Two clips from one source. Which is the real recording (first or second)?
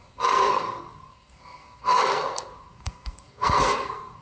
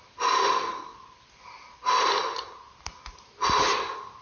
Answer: second